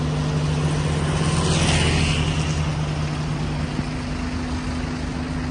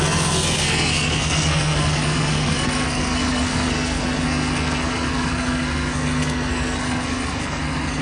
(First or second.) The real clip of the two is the first